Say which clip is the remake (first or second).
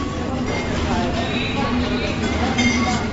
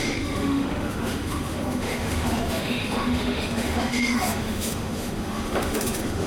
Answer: second